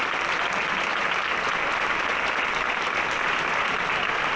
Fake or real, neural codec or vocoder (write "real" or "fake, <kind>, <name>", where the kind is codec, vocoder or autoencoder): real